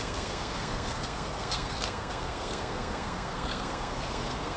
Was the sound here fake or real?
fake